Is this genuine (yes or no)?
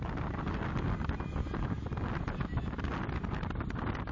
yes